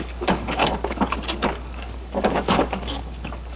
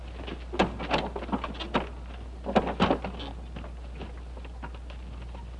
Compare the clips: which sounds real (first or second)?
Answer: second